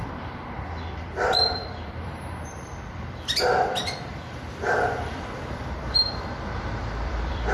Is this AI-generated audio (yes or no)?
yes